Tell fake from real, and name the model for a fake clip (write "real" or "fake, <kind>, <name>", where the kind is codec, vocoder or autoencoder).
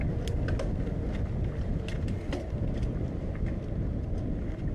real